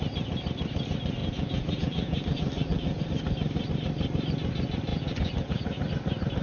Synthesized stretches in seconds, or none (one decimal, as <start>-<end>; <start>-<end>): 1.2-3.0; 4.9-5.9